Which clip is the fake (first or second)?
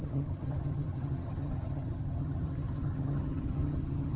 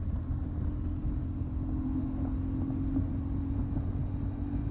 first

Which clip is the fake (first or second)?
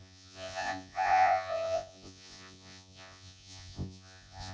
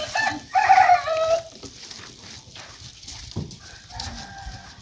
first